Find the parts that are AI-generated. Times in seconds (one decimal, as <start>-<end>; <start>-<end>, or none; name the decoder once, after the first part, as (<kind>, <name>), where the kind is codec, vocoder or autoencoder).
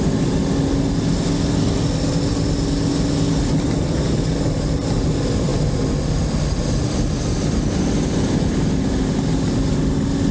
none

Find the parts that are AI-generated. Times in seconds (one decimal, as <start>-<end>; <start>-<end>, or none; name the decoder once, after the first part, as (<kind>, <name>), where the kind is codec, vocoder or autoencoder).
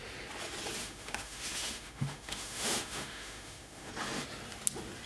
0.8-3.9 (autoencoder, DAC-VAE)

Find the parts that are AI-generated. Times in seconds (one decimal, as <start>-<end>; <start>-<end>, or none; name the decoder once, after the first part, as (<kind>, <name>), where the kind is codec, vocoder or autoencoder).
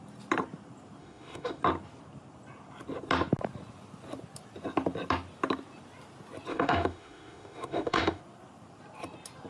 1.0-1.6 (autoencoder, DAC-VAE); 6.5-8.2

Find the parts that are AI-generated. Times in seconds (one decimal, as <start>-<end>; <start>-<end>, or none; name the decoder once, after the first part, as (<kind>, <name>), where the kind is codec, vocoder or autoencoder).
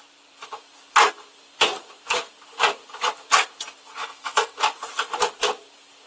4.0-4.6 (autoencoder, DAC-VAE)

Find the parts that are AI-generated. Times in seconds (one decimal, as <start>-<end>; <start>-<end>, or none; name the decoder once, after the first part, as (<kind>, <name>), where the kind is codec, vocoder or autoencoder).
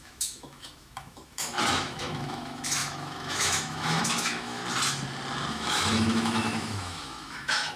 0.0-4.6 (autoencoder, DAC-VAE); 5.5-7.8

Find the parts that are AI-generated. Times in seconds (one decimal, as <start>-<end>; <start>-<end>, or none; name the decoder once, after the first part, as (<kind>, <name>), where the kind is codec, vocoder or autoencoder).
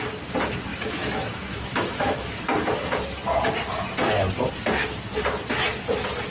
0.7-2.4 (autoencoder, DAC-VAE)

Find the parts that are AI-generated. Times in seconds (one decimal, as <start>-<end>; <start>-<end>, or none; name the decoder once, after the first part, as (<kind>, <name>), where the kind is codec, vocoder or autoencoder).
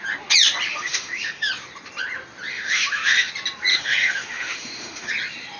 0.7-1.5 (autoencoder, DAC-VAE); 2.5-3.3; 3.7-5.1